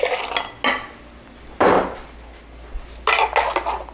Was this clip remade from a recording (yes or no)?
no